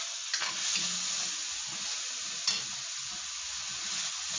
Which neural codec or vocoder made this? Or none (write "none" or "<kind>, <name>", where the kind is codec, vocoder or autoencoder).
none